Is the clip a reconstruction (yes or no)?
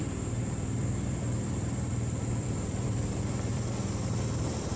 yes